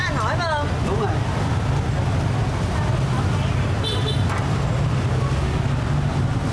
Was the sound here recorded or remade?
recorded